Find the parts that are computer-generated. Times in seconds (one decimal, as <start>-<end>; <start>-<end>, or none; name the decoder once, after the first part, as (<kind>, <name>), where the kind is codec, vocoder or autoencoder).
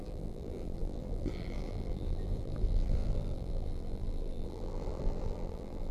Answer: 0.0-5.9 (vocoder, BigVGAN v2)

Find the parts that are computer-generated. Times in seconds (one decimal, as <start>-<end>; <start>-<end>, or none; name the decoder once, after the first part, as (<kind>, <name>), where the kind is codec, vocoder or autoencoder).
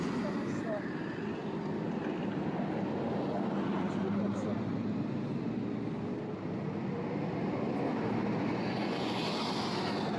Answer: 8.5-9.2 (vocoder, Vocos)